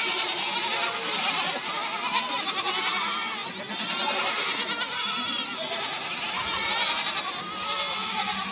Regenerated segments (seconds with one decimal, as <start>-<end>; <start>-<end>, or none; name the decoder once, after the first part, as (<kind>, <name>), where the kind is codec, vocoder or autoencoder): none